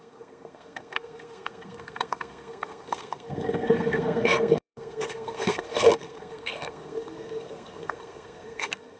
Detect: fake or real fake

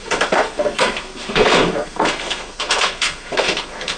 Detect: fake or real fake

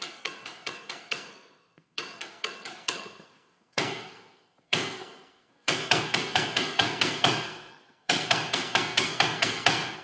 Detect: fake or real fake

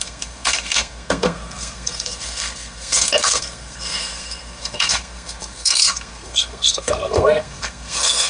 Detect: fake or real fake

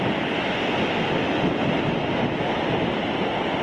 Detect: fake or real real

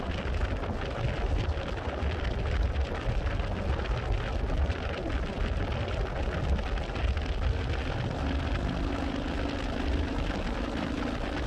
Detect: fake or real real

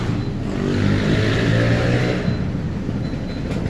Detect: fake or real real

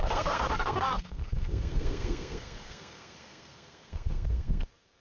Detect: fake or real fake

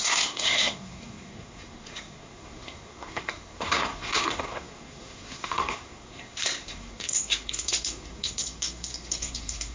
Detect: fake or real fake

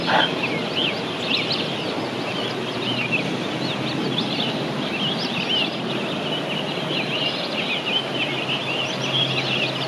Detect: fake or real real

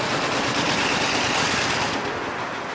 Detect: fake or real real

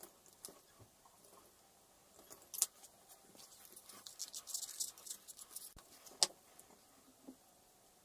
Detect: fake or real real